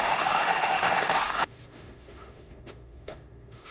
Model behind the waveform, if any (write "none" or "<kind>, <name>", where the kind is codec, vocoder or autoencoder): autoencoder, DAC-VAE